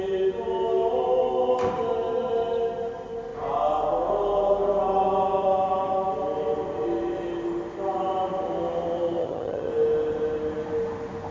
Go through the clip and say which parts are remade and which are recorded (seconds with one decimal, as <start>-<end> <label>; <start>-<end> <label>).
0.0-9.2 recorded; 9.2-9.7 remade; 9.7-11.3 recorded